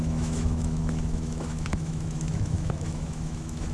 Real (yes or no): no